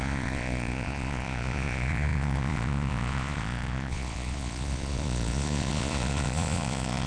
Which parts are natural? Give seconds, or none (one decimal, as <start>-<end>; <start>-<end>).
none